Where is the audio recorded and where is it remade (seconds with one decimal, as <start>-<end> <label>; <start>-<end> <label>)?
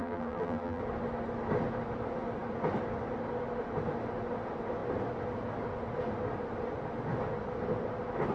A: 0.0-0.8 remade; 0.8-8.3 recorded